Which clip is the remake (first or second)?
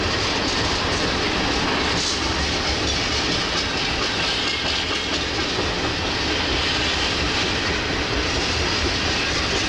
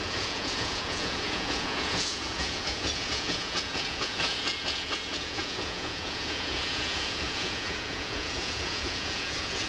second